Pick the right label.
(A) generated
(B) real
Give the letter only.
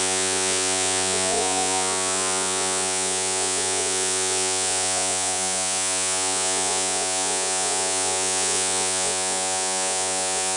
A